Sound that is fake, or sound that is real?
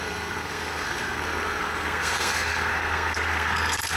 fake